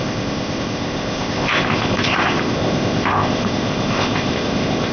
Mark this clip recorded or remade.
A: remade